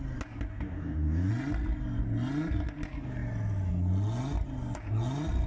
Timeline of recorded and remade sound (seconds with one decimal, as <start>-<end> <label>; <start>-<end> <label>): 0.0-0.5 recorded; 0.5-1.3 remade; 1.3-5.5 recorded